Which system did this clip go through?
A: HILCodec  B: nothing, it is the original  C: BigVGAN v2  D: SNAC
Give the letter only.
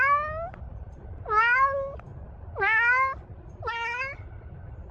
B